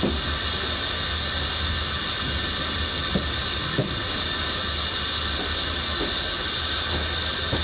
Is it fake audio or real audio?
real